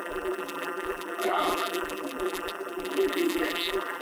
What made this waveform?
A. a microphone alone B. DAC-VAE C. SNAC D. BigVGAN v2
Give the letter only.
D